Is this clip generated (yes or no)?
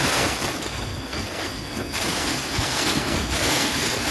yes